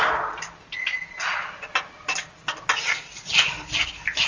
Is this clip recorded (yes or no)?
yes